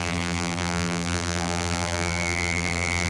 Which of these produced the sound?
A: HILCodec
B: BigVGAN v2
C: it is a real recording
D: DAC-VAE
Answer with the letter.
B